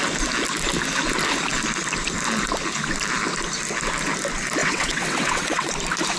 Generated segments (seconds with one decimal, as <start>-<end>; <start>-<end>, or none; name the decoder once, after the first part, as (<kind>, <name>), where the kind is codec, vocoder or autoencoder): 4.6-5.7 (vocoder, WaveNeXt)